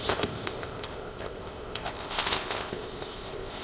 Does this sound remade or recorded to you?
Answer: remade